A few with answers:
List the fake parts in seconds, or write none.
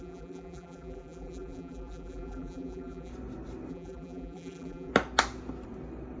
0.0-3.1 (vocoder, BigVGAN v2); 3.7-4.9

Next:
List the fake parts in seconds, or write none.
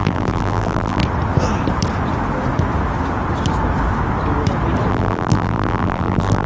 0.0-1.0 (vocoder, BigVGAN v2); 4.9-6.5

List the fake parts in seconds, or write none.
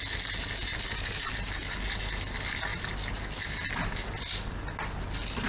0.7-1.3 (vocoder, BigVGAN v2)